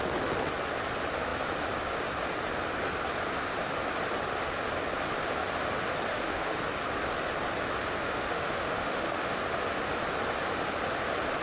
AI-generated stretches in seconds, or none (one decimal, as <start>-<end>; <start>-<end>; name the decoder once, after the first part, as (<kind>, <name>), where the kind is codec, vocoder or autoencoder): 6.1-6.6 (autoencoder, DAC-VAE); 8.0-9.4